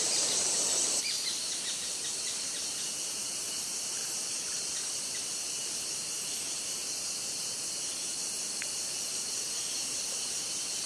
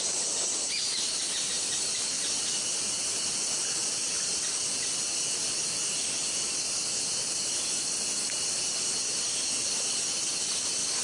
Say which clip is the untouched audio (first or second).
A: second